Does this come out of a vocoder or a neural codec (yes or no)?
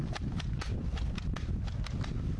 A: no